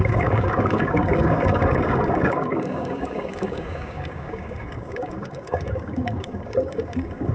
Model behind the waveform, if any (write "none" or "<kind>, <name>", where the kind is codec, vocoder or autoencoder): codec, DAC